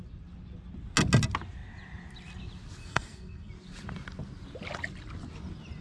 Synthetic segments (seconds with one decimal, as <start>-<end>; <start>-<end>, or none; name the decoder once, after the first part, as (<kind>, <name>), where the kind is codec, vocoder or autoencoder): 2.8-3.5 (codec, SNAC)